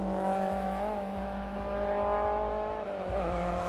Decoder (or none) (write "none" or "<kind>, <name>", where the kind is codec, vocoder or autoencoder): autoencoder, DAC-VAE